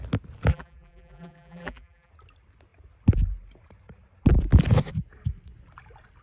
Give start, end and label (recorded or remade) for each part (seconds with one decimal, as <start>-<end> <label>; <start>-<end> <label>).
0.0-0.5 recorded; 0.5-2.1 remade; 2.1-6.2 recorded